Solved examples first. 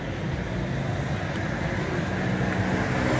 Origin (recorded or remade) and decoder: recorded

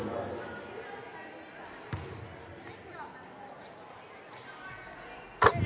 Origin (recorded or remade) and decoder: recorded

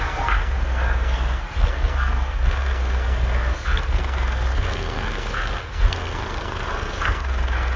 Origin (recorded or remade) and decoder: remade, codec, SNAC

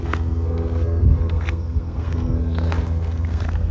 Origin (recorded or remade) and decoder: remade, codec, SNAC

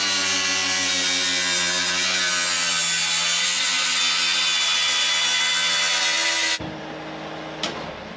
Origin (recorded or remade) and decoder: recorded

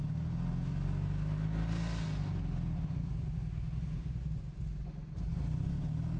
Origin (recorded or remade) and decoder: recorded